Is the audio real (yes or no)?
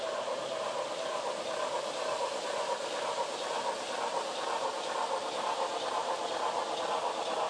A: yes